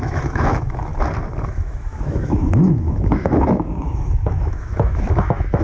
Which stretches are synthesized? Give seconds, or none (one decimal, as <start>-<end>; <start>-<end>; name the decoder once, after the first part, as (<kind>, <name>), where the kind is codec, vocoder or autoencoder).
0.0-0.9 (autoencoder, DAC-VAE); 1.4-5.6